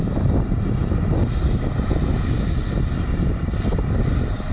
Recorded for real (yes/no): yes